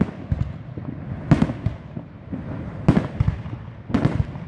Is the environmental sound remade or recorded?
recorded